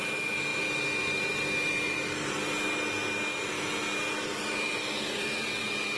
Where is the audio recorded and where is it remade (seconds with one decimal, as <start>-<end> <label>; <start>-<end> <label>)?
0.0-6.0 recorded

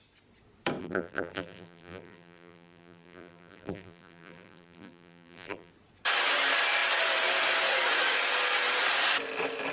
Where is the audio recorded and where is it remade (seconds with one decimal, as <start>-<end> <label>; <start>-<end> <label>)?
0.0-0.8 recorded; 0.8-5.7 remade; 5.7-9.7 recorded